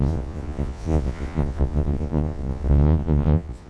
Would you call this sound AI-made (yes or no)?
yes